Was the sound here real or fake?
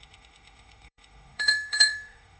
fake